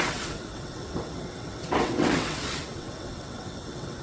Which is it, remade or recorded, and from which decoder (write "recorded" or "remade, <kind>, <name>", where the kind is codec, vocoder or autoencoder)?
remade, vocoder, WaveNeXt